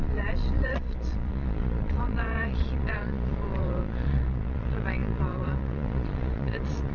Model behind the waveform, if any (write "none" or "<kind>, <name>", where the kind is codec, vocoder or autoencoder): vocoder, Vocos